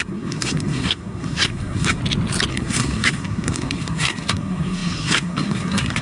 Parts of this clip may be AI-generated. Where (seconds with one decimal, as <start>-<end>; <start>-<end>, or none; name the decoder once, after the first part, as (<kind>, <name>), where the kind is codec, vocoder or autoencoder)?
0.0-2.0 (codec, SNAC); 2.5-6.0